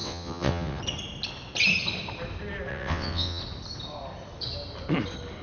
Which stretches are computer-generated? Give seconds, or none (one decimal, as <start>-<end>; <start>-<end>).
0.0-0.8; 2.7-3.4